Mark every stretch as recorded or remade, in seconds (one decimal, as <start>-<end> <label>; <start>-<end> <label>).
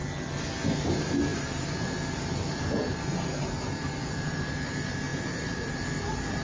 0.0-0.8 recorded; 0.8-6.4 remade